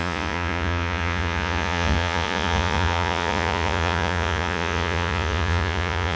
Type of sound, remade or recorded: remade